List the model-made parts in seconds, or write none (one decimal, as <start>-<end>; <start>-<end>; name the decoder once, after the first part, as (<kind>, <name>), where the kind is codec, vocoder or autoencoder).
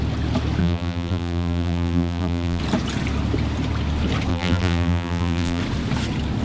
0.6-2.6 (vocoder, BigVGAN v2); 4.3-5.6